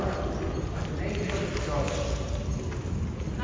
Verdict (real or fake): real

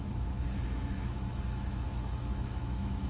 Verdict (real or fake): fake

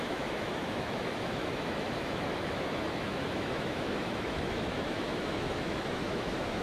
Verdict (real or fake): fake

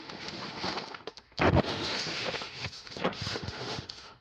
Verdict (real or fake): fake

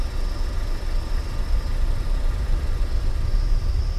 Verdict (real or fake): real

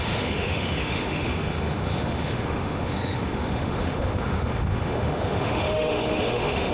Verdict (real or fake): fake